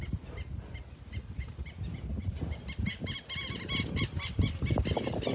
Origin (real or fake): real